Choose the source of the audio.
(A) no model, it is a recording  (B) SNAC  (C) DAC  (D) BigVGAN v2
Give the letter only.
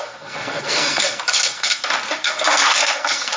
B